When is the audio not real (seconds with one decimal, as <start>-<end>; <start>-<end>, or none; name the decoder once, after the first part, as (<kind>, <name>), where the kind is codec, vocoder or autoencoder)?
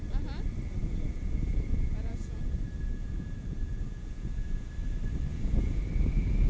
0.8-4.7 (vocoder, Vocos); 5.3-5.8